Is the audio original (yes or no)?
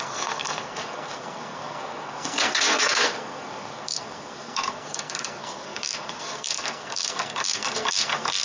no